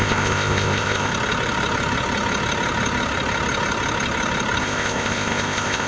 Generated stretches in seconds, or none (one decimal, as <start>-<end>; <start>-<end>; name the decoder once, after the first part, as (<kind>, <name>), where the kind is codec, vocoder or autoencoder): 0.0-1.1 (codec, ZipCodec); 4.6-5.9